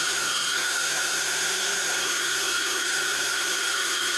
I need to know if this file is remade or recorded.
remade